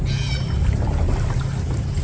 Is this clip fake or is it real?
real